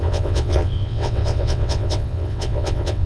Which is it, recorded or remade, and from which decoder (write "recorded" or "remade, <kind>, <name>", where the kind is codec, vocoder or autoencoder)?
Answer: remade, vocoder, WaveNeXt